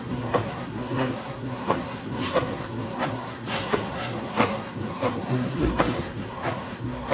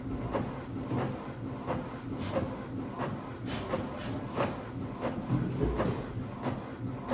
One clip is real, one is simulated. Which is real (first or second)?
second